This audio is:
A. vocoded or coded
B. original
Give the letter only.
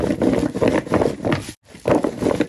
B